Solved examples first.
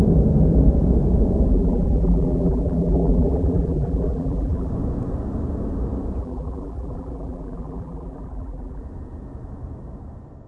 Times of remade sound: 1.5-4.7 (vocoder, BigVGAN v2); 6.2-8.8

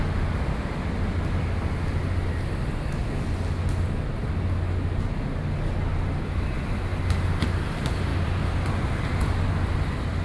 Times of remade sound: 8.1-8.7 (vocoder, BigVGAN v2)

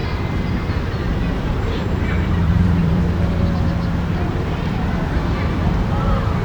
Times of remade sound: 0.0-3.0 (vocoder, BigVGAN v2); 4.3-4.8

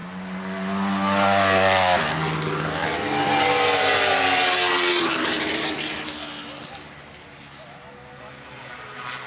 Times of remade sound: 2.8-5.8 (vocoder, BigVGAN v2)

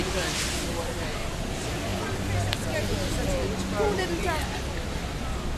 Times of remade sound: none

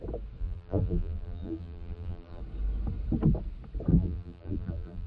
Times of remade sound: 0.4-2.4 (vocoder, BigVGAN v2); 3.9-5.1

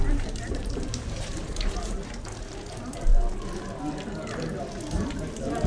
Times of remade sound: 0.0-3.1 (vocoder, BigVGAN v2); 4.9-5.7

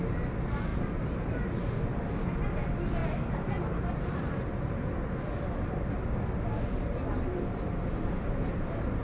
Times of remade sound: 0.7-1.4 (vocoder, BigVGAN v2); 3.0-4.4; 7.1-9.0